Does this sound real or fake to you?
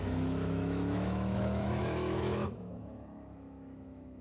fake